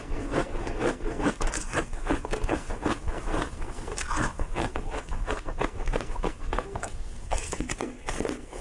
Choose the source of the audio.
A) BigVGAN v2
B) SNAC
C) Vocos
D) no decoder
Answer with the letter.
B